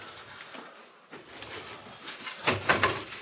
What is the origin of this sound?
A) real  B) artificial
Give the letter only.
A